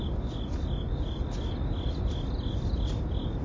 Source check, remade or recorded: recorded